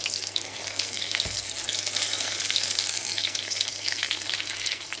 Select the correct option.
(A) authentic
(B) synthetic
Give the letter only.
B